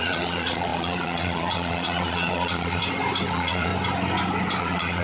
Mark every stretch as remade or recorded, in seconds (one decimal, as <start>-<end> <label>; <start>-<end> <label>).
0.0-2.8 remade; 2.8-3.3 recorded; 3.3-3.7 remade; 3.7-4.6 recorded; 4.6-5.0 remade